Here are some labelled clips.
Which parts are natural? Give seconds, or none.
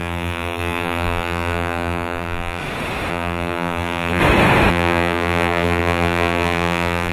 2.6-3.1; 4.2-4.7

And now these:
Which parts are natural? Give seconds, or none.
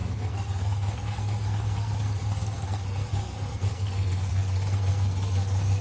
none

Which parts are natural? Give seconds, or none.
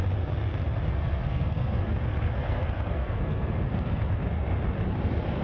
0.0-0.9; 4.1-5.4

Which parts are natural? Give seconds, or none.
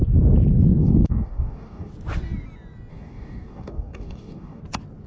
0.0-0.8; 1.9-2.9; 4.6-5.1